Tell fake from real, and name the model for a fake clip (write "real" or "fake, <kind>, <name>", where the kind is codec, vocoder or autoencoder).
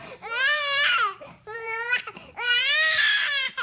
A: fake, vocoder, BigVGAN v2